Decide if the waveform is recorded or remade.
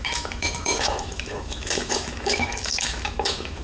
remade